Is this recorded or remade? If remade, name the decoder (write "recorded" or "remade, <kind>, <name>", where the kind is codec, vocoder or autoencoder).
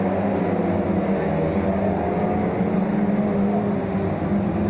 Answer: recorded